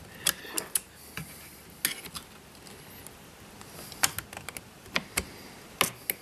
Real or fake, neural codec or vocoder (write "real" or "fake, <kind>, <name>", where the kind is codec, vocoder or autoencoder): real